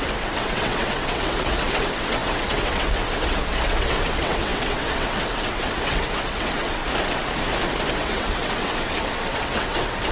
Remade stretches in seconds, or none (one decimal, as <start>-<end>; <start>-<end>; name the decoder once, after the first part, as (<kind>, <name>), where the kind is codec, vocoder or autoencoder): 0.0-6.8 (vocoder, WaveNeXt); 7.9-10.1

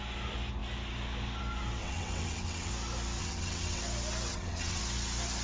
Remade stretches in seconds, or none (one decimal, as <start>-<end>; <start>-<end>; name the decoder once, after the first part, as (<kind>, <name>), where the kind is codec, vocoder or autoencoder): 1.8-2.7 (vocoder, WaveNeXt); 3.2-3.8; 4.3-4.8

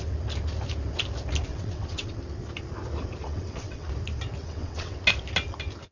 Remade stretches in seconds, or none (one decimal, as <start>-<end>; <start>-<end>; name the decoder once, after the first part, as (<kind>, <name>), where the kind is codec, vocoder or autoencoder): 1.5-2.1 (vocoder, WaveNeXt); 3.2-3.9; 4.4-5.0

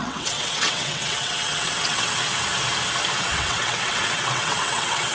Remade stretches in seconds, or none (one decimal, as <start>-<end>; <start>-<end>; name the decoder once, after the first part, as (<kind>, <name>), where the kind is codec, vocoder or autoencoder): 0.0-2.3 (vocoder, WaveNeXt); 3.2-5.1